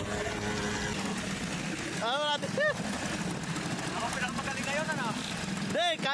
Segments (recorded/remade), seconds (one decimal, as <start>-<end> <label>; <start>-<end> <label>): 0.0-6.1 recorded